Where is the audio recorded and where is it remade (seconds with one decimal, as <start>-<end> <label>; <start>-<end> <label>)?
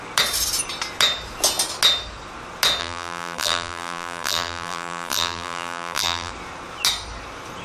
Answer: 0.0-2.8 recorded; 2.8-6.3 remade; 6.3-7.6 recorded